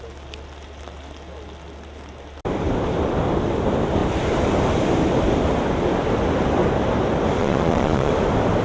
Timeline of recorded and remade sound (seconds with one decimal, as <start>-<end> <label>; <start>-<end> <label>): 0.0-7.4 recorded; 7.4-8.1 remade; 8.1-8.6 recorded